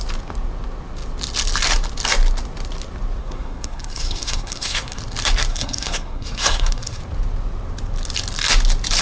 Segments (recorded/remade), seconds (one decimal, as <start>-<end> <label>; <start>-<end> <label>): 0.0-3.2 recorded; 3.2-5.0 remade; 5.0-5.5 recorded; 5.5-7.0 remade; 7.0-9.0 recorded